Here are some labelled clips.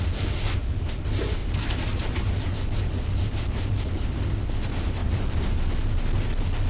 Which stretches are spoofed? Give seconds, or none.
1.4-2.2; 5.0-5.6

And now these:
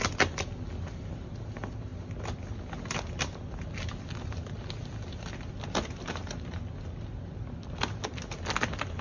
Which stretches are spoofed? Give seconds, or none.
none

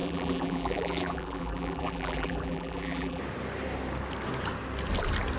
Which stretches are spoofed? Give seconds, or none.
0.0-3.2

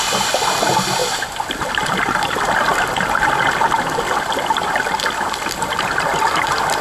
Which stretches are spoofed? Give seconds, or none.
0.0-1.0; 5.1-6.8

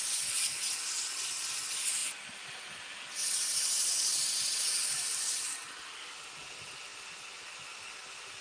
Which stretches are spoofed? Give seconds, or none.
4.8-5.7

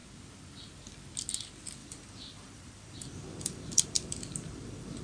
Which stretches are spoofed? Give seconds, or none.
1.8-5.0

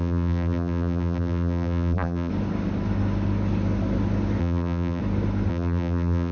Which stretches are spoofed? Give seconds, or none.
0.0-2.3; 4.4-5.0; 5.5-6.3